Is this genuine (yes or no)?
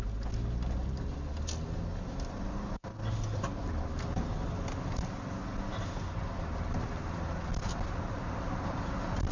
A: yes